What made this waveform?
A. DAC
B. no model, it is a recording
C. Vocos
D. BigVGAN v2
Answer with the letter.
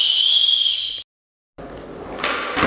B